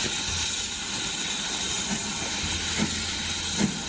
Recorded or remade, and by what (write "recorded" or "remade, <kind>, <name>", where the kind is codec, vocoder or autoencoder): recorded